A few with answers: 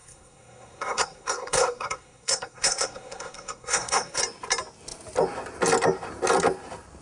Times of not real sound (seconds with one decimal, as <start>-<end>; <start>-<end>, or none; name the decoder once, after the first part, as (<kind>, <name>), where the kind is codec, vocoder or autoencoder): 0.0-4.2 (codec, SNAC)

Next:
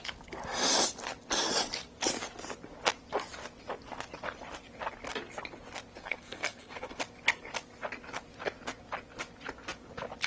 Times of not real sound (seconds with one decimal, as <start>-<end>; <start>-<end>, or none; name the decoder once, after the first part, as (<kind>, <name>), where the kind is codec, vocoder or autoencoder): 6.0-7.0 (codec, SNAC)

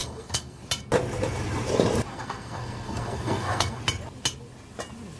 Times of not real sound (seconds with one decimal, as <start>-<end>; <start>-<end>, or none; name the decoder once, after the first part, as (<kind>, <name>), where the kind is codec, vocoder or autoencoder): 0.0-0.6 (codec, SNAC); 2.1-3.8

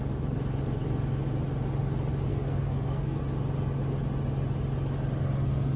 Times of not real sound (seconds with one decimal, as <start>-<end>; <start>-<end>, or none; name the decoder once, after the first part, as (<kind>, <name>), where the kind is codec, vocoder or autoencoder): 2.3-3.2 (codec, SNAC)

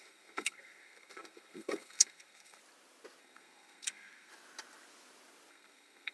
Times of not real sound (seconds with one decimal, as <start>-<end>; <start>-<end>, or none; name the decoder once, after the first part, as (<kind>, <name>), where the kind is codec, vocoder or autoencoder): 0.0-2.6 (codec, SNAC); 3.2-4.3; 5.5-6.1